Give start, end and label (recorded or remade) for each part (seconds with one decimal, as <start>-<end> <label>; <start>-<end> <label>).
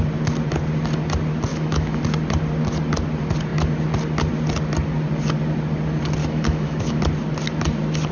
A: 0.0-1.5 recorded; 1.5-2.0 remade; 2.0-6.2 recorded; 6.2-7.0 remade; 7.0-8.1 recorded